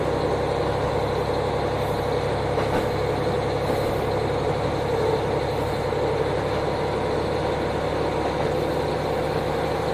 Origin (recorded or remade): recorded